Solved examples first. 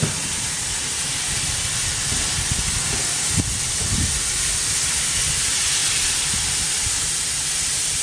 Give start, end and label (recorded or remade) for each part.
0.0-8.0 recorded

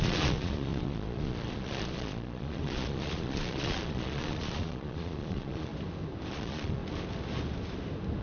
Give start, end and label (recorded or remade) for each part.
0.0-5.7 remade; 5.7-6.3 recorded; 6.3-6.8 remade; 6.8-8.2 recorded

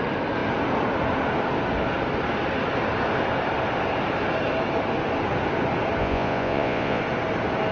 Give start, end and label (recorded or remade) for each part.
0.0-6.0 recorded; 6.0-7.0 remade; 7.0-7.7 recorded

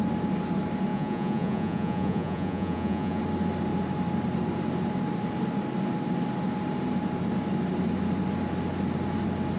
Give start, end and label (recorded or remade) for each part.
0.0-0.9 recorded; 0.9-3.2 remade; 3.2-9.6 recorded

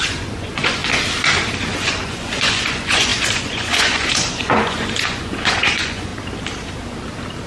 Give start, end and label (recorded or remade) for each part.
0.0-0.8 remade; 0.8-1.8 recorded; 1.8-6.1 remade; 6.1-7.5 recorded

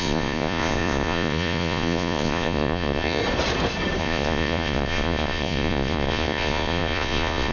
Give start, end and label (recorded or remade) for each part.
0.0-3.2 remade; 3.2-4.0 recorded; 4.0-7.5 remade

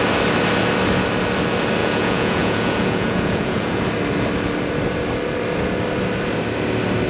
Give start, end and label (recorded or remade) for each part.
0.0-1.8 recorded; 1.8-3.8 remade; 3.8-7.1 recorded